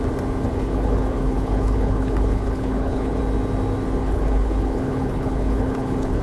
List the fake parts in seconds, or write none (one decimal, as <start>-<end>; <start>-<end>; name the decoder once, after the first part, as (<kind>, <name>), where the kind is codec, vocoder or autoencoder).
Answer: 0.5-3.2 (codec, HILCodec); 4.0-6.2